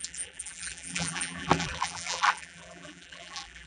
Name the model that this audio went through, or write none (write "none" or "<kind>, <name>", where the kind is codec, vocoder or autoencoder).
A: vocoder, BigVGAN v2